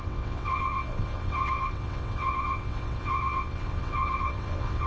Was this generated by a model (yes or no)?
yes